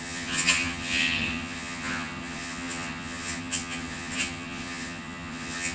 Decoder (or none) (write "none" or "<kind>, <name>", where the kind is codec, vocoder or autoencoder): vocoder, HiFi-GAN